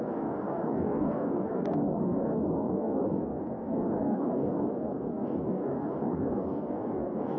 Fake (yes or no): yes